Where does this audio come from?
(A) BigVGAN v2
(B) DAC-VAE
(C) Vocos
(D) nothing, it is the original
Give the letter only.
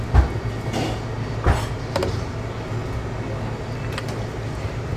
D